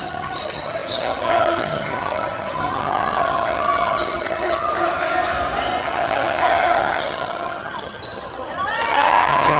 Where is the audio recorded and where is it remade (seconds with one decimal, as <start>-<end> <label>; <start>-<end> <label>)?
0.0-4.7 remade; 4.7-5.8 recorded; 5.8-9.6 remade